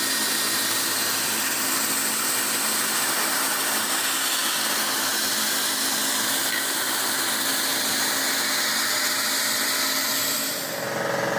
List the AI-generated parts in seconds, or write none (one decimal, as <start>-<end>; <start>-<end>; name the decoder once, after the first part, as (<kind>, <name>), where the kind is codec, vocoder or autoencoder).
none